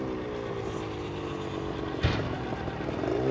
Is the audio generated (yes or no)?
no